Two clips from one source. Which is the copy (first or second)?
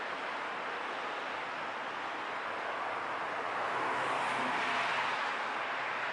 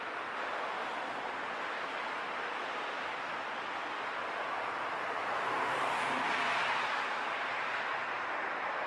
second